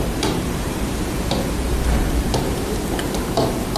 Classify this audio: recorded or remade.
remade